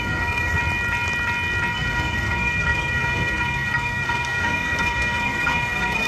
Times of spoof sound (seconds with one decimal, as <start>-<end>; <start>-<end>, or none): 0.0-0.6; 1.7-6.1